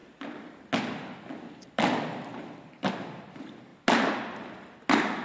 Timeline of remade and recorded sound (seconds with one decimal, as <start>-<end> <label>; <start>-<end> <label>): 0.0-5.2 recorded